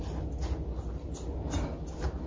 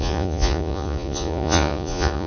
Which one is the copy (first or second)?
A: second